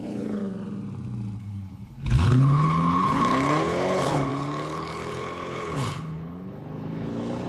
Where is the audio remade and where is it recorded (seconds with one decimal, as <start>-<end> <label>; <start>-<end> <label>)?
0.0-0.4 remade; 0.4-1.4 recorded; 1.4-7.5 remade